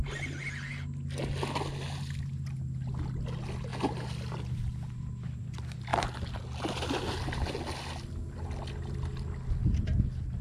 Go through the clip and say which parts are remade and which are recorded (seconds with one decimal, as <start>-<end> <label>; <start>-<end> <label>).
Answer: 0.0-10.4 recorded